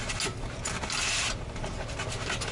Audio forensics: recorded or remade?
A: recorded